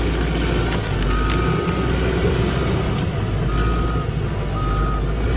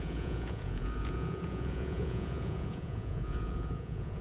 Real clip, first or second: first